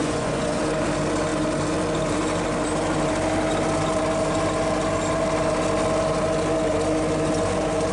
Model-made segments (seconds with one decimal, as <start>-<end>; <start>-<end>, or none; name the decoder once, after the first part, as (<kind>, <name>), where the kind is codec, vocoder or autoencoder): 0.0-0.6 (vocoder, Vocos)